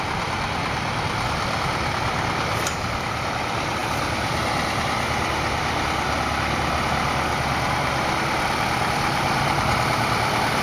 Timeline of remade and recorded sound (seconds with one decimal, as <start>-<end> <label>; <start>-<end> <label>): 0.0-10.6 recorded